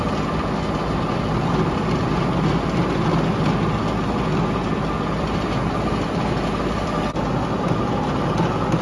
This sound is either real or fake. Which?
real